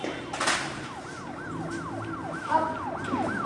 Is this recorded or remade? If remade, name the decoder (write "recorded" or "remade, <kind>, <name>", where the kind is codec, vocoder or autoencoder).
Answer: recorded